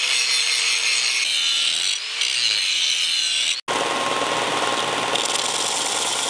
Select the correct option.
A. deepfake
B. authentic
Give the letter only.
B